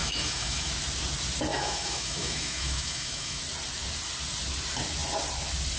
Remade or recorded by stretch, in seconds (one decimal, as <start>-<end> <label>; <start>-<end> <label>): 0.0-0.7 remade; 0.7-1.5 recorded; 1.5-3.4 remade; 3.4-5.8 recorded